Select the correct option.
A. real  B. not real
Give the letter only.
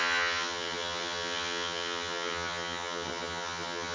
B